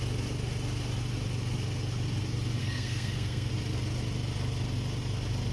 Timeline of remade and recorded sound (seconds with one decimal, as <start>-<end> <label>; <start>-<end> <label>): 0.0-2.6 recorded; 2.6-3.5 remade; 3.5-5.5 recorded